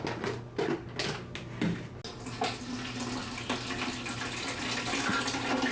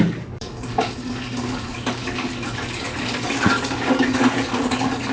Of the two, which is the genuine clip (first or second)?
first